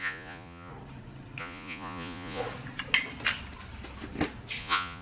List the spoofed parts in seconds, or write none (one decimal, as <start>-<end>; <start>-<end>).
0.0-0.7; 1.4-2.4; 4.6-5.0

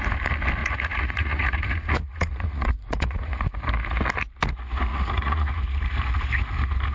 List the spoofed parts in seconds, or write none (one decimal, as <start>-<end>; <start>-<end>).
0.6-3.4; 4.9-5.6